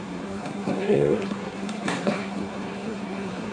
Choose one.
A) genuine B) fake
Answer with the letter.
B